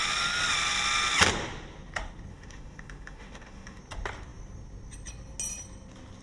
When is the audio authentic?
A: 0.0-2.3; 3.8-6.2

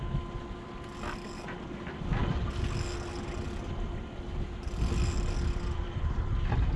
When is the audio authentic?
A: 0.0-6.8

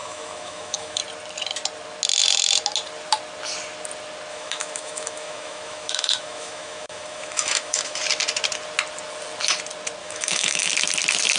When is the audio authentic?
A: 1.0-4.3; 8.0-10.0; 10.7-11.4